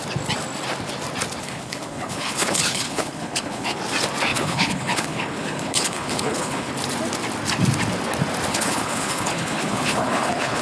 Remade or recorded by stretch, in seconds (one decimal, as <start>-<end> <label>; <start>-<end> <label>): 0.0-1.4 recorded; 1.4-3.8 remade; 3.8-4.3 recorded; 4.3-6.7 remade; 6.7-8.5 recorded; 8.5-10.6 remade